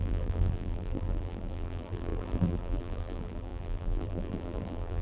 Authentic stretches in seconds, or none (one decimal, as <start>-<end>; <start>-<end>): none